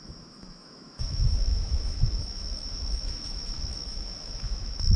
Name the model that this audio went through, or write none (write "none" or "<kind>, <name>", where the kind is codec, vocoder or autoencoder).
autoencoder, DAC-VAE